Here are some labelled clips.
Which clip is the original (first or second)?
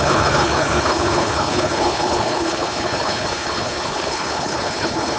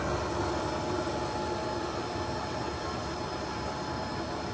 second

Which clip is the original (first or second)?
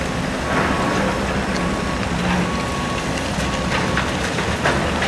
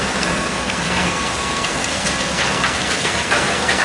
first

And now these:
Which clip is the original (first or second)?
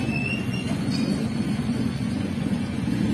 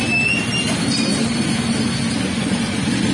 second